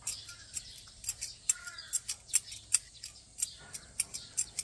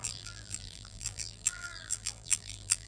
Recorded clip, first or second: first